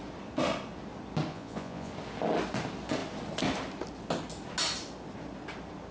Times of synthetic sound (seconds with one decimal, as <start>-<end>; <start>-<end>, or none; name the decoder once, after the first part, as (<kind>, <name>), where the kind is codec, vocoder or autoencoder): 1.3-1.9 (vocoder, Vocos)